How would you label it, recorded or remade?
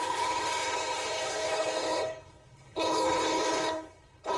remade